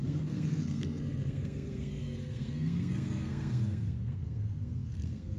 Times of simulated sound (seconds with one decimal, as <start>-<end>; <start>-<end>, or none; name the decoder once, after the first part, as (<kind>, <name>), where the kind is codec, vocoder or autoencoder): 0.0-5.4 (codec, SNAC)